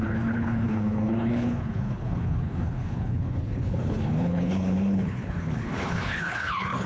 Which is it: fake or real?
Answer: fake